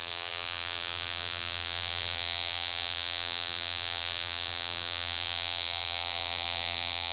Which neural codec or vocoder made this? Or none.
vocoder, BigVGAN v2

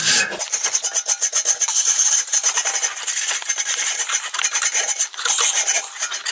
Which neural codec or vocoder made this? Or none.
none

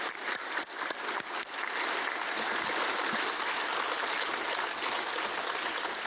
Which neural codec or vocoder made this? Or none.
none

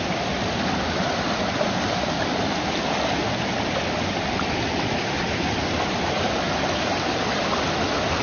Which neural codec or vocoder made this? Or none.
none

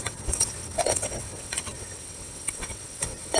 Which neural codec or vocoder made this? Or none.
vocoder, WaveNeXt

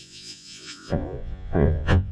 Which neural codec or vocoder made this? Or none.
vocoder, Vocos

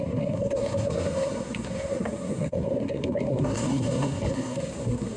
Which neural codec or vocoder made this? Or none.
codec, SNAC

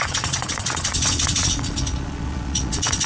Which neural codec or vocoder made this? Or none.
vocoder, Vocos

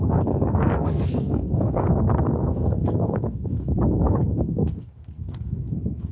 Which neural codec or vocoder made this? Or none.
codec, SNAC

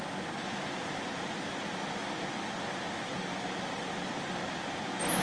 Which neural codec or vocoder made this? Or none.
none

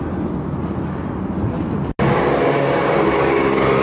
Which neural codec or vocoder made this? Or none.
none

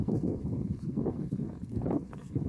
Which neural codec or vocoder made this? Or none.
codec, SNAC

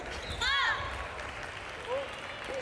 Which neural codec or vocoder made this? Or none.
none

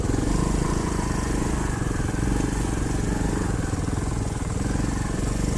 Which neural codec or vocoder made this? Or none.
vocoder, Vocos